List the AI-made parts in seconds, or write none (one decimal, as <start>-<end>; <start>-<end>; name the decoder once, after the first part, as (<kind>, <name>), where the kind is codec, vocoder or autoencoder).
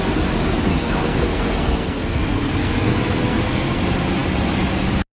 0.7-3.8 (codec, SNAC)